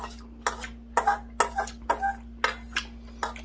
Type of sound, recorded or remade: recorded